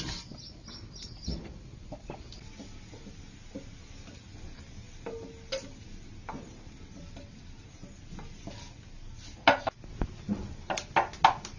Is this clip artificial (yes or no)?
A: no